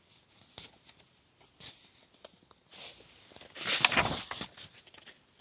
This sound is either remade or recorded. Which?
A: recorded